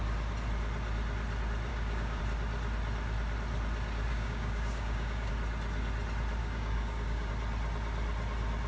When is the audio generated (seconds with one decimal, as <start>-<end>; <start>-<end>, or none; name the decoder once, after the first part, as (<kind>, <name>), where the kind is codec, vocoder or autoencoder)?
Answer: 1.7-2.2 (codec, DAC); 4.1-5.3; 6.4-7.3